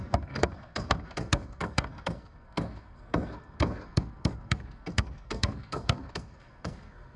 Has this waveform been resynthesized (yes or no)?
yes